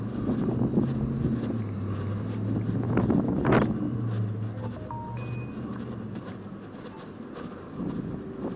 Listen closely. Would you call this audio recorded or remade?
recorded